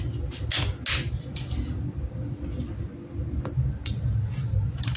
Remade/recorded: recorded